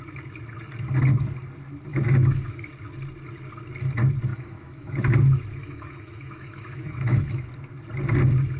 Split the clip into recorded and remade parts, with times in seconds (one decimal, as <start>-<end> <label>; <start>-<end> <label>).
0.0-1.9 recorded; 1.9-2.7 remade; 2.7-4.3 recorded; 4.3-5.0 remade; 5.0-5.6 recorded; 5.6-7.5 remade; 7.5-8.6 recorded